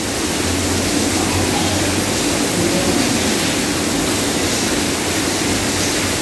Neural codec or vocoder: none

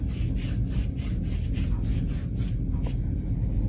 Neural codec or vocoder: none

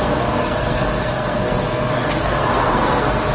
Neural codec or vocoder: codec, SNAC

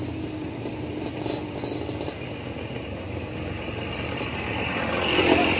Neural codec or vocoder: none